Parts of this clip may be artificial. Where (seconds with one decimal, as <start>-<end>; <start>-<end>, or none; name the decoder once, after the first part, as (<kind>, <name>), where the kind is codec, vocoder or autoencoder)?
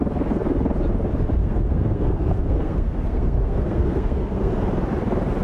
1.4-4.5 (codec, SNAC)